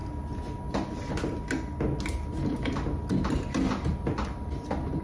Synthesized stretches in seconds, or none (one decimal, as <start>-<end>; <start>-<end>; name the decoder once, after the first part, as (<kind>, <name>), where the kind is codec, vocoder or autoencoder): none